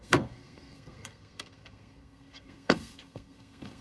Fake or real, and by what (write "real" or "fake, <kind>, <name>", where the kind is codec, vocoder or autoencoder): fake, codec, SNAC